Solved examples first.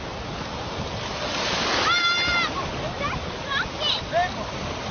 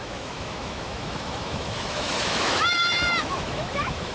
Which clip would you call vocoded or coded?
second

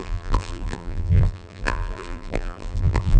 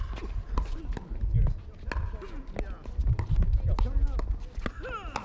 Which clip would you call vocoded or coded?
first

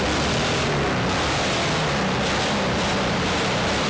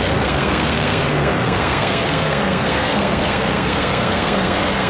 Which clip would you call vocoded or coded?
second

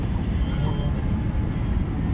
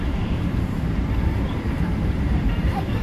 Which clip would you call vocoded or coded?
second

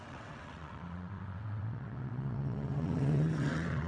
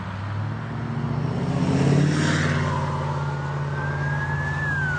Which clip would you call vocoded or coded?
first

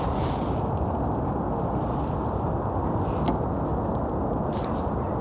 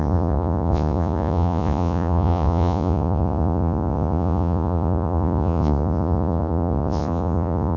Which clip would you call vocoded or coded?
second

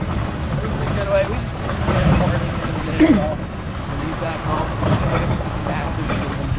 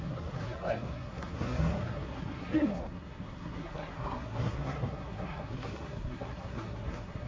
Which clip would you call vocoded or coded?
second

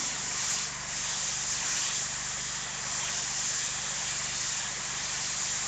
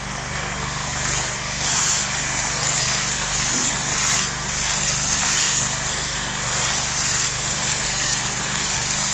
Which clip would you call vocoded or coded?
second